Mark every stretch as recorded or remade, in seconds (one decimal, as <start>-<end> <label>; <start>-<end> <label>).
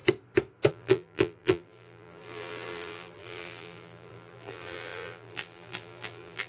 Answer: 0.0-0.7 recorded; 0.7-6.5 remade